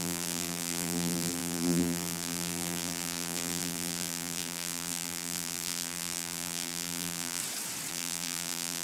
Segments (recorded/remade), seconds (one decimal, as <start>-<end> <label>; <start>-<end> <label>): 0.0-7.4 remade; 7.4-7.9 recorded; 7.9-8.8 remade